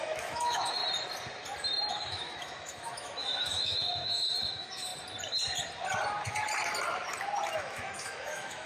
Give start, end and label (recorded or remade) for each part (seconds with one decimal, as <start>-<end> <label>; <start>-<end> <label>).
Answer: 0.0-0.8 remade; 0.8-1.9 recorded; 1.9-4.9 remade; 4.9-7.5 recorded; 7.5-8.7 remade